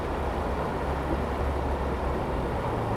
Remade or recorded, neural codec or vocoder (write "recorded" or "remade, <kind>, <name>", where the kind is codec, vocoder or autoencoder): recorded